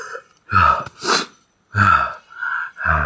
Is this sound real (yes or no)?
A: yes